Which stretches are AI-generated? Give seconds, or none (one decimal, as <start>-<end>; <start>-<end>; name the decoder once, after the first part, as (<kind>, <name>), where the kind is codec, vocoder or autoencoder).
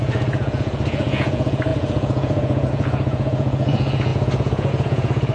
0.0-5.3 (vocoder, Vocos)